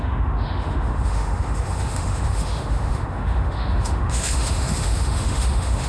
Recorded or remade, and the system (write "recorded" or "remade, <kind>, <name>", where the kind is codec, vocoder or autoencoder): remade, autoencoder, DAC-VAE